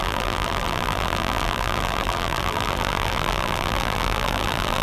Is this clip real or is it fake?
fake